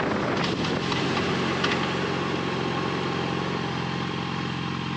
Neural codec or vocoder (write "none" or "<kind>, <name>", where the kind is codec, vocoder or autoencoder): none